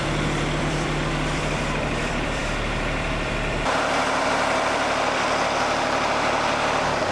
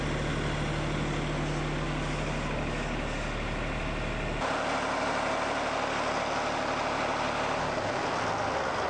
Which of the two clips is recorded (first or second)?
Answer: second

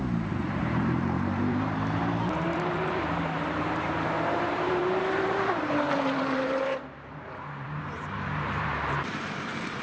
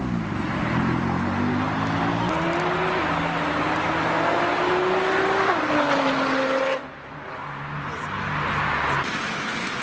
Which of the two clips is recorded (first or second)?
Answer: second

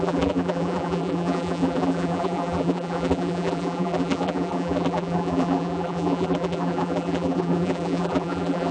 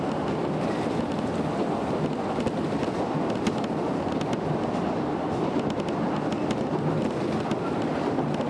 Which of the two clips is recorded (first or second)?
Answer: second